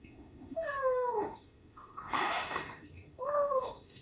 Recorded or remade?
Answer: remade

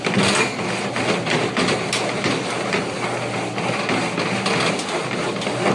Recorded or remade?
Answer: recorded